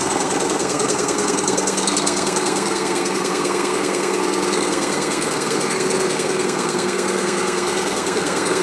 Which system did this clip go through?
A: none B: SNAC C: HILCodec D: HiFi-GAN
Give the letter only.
B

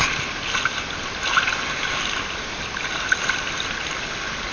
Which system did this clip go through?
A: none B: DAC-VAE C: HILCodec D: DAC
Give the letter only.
A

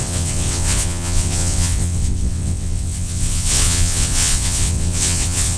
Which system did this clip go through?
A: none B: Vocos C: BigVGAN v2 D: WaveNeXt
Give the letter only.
D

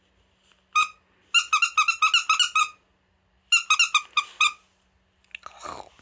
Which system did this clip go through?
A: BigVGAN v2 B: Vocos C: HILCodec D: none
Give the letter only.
D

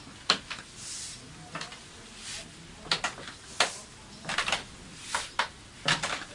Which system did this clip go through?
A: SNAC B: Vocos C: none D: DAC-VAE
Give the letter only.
C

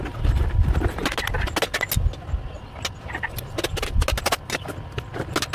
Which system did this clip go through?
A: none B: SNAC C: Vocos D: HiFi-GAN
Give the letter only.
A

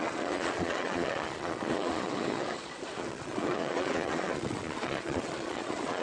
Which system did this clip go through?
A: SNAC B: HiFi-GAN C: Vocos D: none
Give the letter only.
C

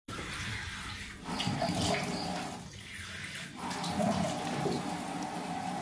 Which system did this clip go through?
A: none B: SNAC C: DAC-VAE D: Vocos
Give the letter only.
A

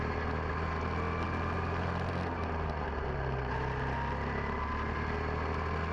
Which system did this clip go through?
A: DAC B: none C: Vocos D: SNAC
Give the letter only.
B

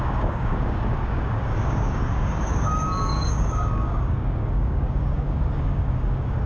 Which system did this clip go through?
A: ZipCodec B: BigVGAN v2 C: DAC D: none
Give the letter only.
C